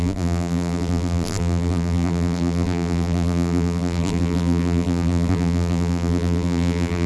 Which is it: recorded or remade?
remade